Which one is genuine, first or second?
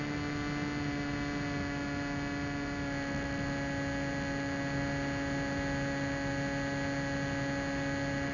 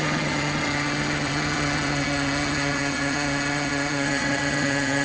first